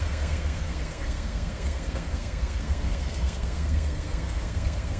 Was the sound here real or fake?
fake